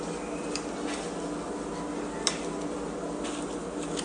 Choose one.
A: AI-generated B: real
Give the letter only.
B